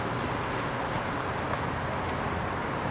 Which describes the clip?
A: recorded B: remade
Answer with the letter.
A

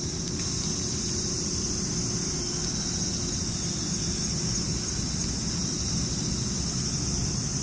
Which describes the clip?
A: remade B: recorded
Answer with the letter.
B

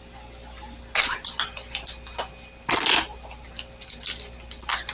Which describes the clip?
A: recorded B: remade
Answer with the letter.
A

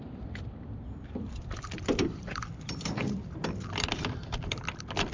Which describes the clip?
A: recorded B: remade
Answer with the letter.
B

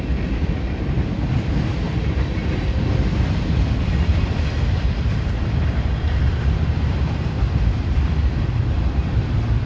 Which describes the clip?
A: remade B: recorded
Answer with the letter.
A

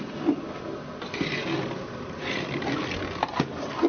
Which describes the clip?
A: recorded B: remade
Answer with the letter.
A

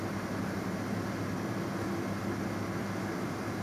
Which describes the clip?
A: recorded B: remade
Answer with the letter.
A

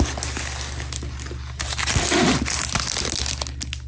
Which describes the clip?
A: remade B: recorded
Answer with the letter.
B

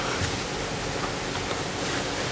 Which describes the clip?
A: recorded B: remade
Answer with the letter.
A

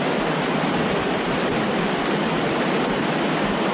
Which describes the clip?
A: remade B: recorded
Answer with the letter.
B